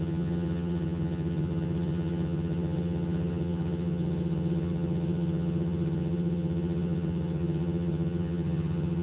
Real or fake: fake